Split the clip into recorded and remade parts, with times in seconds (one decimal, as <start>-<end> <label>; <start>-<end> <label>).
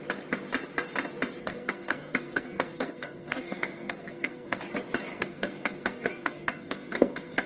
0.0-1.4 recorded; 1.4-4.6 remade; 4.6-5.1 recorded; 5.1-7.5 remade